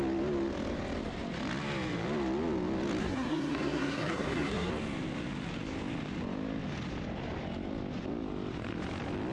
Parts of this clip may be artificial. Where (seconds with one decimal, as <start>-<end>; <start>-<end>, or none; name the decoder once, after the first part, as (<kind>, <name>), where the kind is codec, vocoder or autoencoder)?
3.0-4.7 (codec, SNAC)